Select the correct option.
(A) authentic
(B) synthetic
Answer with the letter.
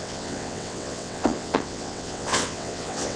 B